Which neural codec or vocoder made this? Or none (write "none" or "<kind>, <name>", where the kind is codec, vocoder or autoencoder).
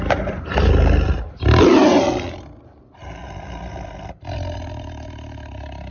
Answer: none